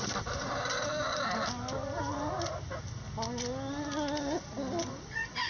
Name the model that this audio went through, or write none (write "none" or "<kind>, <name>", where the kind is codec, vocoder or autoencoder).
none